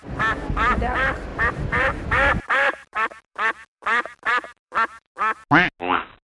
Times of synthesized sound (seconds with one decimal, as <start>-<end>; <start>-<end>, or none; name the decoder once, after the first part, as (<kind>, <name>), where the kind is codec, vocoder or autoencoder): 1.3-5.1 (vocoder, BigVGAN v2)